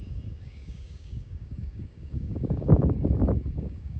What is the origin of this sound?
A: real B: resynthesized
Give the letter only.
B